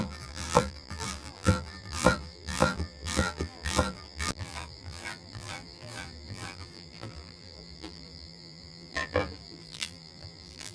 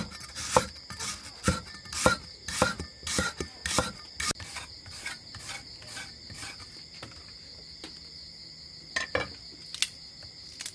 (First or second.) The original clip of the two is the second